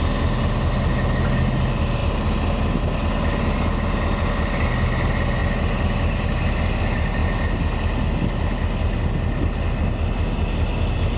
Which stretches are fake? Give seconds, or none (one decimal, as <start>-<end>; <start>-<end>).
none